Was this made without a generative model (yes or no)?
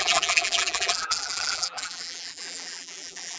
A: no